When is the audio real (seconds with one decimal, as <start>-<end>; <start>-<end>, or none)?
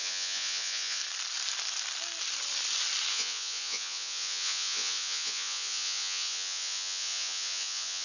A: 1.0-3.1